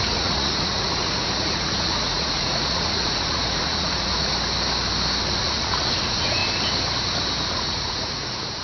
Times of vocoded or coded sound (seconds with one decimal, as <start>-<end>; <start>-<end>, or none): 0.0-4.3; 5.4-6.4; 7.5-8.6